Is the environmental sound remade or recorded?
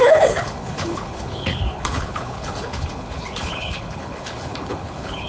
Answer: remade